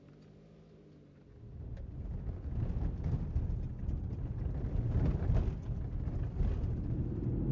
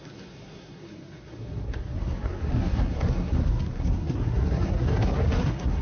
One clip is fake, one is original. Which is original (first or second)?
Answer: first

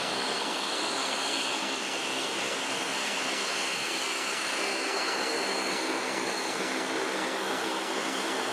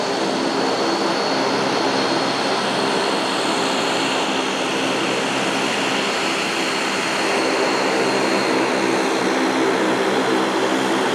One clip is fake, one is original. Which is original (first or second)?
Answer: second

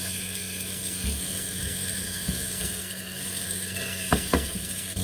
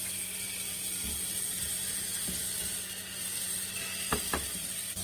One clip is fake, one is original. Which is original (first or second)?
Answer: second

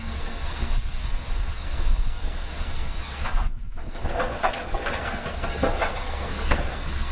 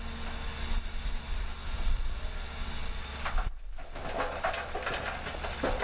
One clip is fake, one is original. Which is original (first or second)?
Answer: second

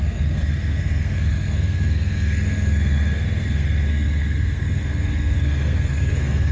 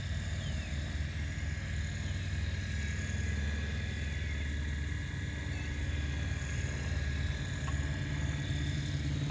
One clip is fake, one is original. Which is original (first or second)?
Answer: second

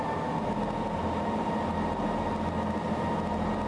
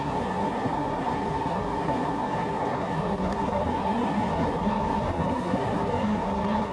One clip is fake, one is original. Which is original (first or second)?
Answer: first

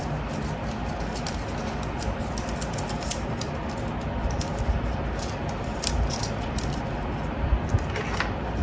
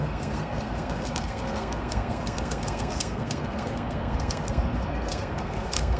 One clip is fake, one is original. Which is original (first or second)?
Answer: first